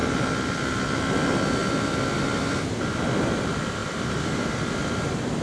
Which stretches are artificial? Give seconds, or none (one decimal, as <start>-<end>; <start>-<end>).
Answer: 0.0-0.7; 3.8-4.8